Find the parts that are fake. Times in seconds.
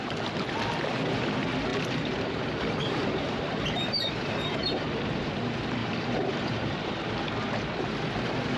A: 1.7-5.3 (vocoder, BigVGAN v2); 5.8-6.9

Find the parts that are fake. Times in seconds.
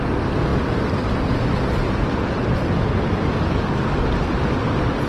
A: none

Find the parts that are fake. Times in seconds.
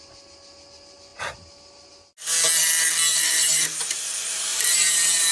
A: 3.1-4.1 (vocoder, BigVGAN v2); 4.5-5.3